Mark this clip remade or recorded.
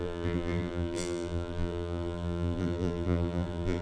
remade